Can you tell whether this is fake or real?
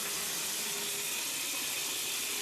real